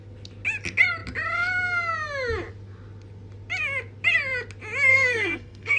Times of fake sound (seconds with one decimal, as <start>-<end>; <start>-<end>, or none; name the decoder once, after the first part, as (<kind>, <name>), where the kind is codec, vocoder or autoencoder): 4.9-5.8 (codec, SNAC)